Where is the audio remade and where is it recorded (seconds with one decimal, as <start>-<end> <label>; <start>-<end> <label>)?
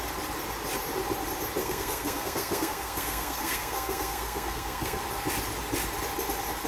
0.0-1.6 recorded; 1.6-5.0 remade; 5.0-6.7 recorded